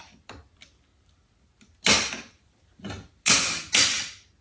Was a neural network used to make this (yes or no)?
no